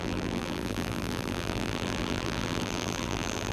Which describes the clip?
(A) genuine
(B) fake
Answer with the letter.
B